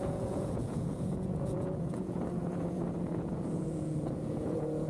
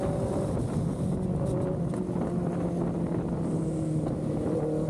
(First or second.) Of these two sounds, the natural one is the second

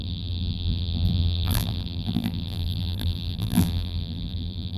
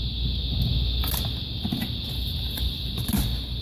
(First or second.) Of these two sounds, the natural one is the second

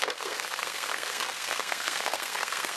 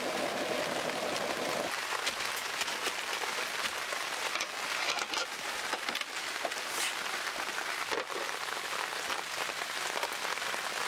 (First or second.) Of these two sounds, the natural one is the second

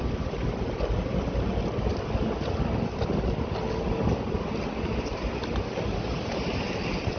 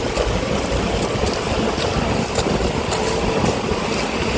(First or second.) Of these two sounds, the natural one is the first